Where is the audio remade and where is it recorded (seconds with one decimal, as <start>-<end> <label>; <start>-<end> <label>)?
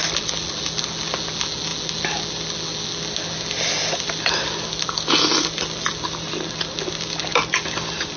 0.0-8.2 recorded